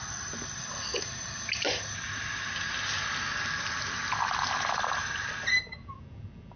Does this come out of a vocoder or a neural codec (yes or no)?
no